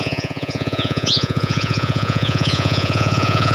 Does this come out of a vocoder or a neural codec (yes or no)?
yes